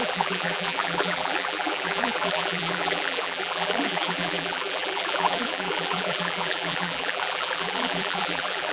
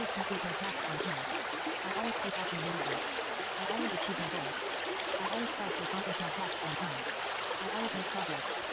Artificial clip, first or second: first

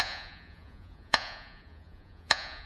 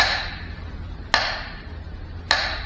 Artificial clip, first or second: first